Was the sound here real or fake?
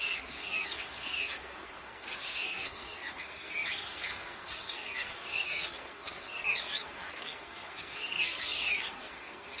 fake